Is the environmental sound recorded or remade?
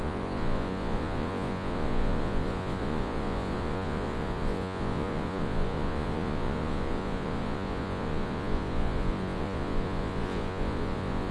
remade